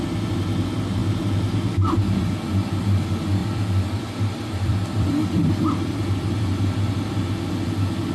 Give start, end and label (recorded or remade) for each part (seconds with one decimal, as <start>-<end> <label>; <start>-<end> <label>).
0.0-3.4 recorded; 3.4-7.3 remade; 7.3-8.1 recorded